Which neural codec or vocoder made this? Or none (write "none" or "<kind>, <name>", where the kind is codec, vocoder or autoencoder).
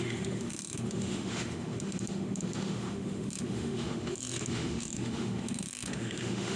autoencoder, DAC-VAE